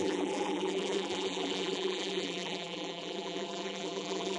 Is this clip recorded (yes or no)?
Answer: no